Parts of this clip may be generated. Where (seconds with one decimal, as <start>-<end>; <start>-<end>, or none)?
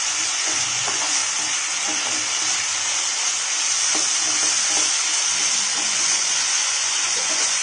0.0-1.2; 5.8-7.6